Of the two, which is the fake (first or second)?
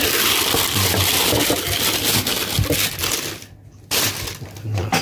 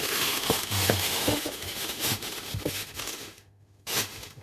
second